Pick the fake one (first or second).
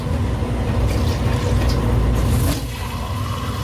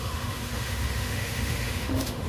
second